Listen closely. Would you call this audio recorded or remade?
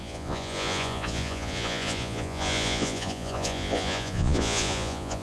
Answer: remade